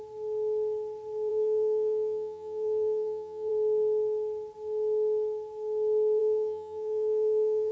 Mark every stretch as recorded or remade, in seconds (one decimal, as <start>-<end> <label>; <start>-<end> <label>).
0.0-1.3 recorded; 1.3-3.5 remade; 3.5-6.2 recorded; 6.2-7.7 remade